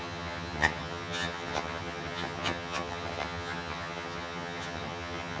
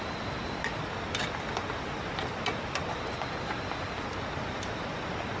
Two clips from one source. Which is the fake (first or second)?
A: first